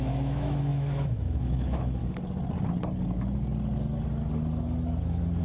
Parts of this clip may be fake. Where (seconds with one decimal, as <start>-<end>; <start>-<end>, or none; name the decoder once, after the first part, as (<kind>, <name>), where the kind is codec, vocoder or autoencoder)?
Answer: 0.0-2.0 (autoencoder, DAC-VAE)